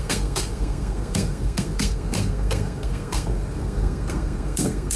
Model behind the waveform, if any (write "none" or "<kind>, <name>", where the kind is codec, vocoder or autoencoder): codec, SNAC